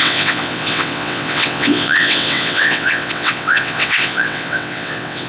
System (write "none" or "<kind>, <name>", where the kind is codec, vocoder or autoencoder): vocoder, WaveNeXt